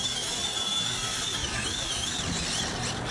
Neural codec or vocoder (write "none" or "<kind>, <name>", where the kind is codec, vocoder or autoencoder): none